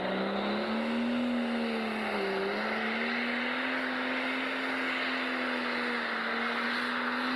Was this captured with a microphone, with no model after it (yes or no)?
yes